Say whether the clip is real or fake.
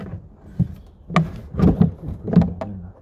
real